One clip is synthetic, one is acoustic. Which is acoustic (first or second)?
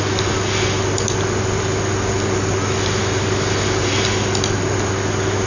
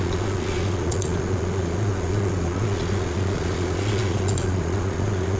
first